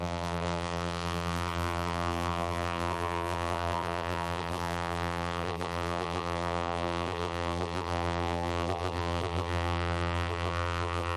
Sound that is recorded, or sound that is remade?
remade